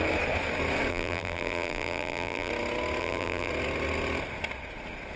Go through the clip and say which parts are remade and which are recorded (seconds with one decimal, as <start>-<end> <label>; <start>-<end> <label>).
0.0-0.9 recorded; 0.9-2.5 remade; 2.5-3.0 recorded; 3.0-3.5 remade; 3.5-5.2 recorded